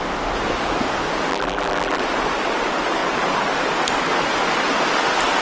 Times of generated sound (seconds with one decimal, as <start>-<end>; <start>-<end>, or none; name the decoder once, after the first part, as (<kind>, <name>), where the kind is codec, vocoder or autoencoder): 1.3-2.0 (vocoder, BigVGAN v2)